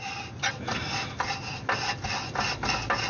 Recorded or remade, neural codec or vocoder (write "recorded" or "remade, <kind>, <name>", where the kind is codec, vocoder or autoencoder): recorded